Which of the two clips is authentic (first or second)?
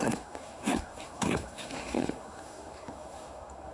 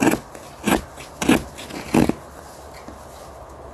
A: second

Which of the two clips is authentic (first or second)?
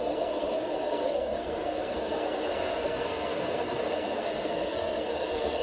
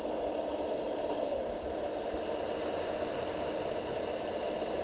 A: second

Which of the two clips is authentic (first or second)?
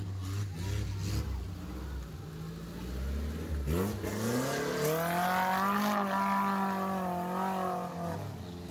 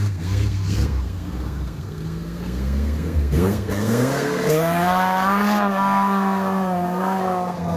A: first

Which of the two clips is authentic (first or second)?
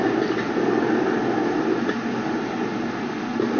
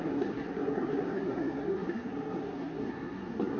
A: first